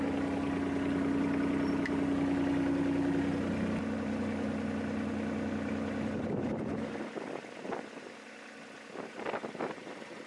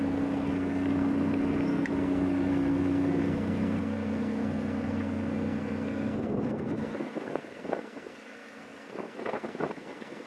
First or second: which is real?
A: first